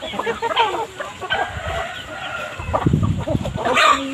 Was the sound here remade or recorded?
recorded